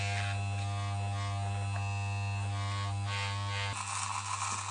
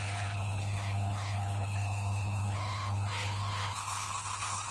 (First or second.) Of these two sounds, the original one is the first